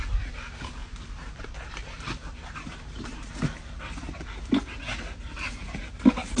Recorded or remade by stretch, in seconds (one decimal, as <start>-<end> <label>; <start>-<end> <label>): 0.0-0.8 recorded; 0.8-3.3 remade; 3.3-6.4 recorded